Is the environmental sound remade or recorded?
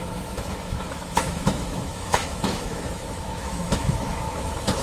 remade